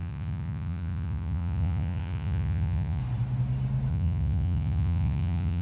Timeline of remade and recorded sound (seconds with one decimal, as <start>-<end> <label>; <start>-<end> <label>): 0.0-3.0 remade; 3.0-3.9 recorded; 3.9-5.6 remade